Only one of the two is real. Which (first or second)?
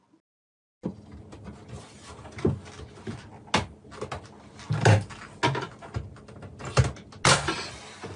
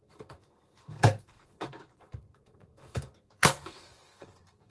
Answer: first